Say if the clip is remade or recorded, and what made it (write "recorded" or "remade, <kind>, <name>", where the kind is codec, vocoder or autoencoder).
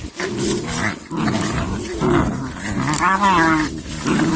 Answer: recorded